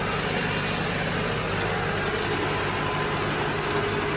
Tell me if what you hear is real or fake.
real